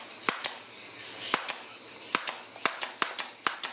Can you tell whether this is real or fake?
real